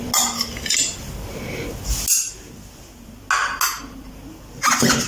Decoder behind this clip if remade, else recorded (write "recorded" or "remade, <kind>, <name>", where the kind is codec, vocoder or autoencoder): recorded